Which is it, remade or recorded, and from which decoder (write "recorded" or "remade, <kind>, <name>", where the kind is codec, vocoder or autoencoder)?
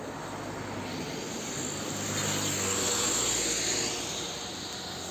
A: recorded